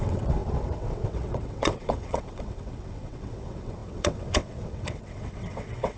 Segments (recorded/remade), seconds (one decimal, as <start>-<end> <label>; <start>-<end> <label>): 0.0-6.0 remade